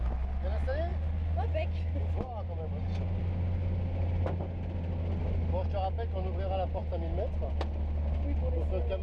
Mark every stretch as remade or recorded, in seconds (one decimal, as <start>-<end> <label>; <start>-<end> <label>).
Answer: 0.0-9.0 recorded